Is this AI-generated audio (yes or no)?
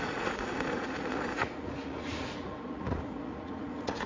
yes